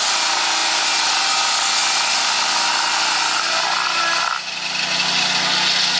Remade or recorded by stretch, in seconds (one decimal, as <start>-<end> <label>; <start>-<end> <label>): 0.0-6.0 recorded